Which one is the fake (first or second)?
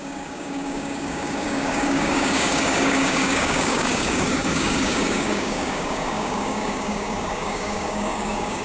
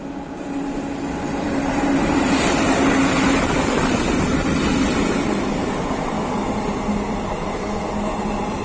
first